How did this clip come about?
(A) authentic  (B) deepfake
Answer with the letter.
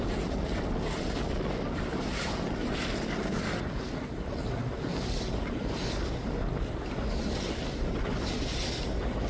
A